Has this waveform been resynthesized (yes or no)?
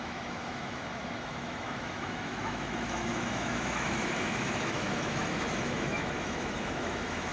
yes